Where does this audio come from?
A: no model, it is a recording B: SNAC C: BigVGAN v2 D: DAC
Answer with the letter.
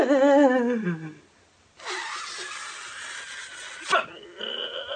A